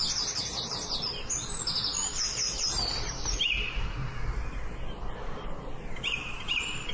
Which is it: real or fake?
real